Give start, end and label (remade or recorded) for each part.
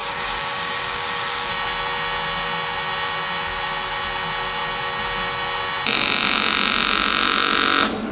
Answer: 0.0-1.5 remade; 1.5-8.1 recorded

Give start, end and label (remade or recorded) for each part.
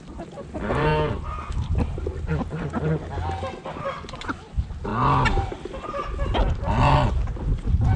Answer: 0.0-8.0 recorded